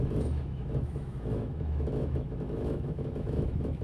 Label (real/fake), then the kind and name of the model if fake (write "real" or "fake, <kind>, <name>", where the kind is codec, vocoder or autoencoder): fake, autoencoder, DAC-VAE